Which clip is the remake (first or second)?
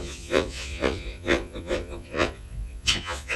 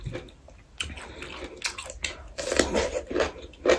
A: first